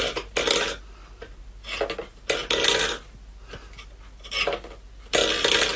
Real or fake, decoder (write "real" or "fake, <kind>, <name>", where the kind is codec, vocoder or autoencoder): real